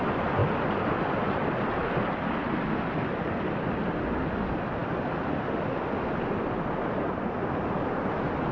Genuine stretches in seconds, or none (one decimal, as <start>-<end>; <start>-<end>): 0.0-8.5